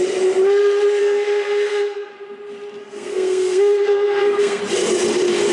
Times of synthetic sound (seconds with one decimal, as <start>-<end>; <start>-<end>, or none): 1.0-2.1; 2.8-4.6